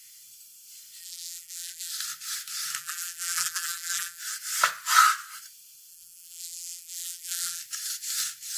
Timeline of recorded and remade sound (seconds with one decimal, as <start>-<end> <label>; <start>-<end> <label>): 0.0-1.0 recorded; 1.0-1.9 remade; 1.9-2.8 recorded; 2.8-4.2 remade; 4.2-5.9 recorded; 5.9-7.6 remade; 7.6-8.6 recorded